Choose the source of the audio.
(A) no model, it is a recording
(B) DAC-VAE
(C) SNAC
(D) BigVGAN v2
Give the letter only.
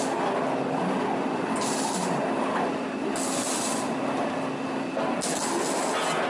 A